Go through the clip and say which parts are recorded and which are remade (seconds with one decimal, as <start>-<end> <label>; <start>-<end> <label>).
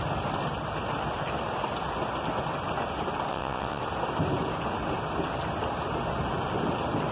0.0-3.3 recorded; 3.3-3.8 remade; 3.8-7.1 recorded